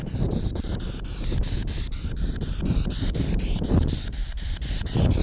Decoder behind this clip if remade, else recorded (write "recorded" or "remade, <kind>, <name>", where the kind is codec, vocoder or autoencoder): recorded